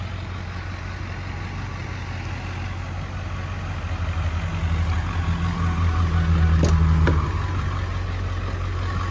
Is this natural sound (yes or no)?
yes